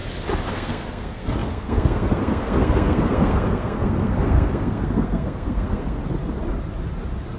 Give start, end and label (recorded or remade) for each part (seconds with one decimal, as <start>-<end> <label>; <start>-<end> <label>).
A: 0.0-0.5 recorded; 0.5-6.0 remade; 6.0-7.4 recorded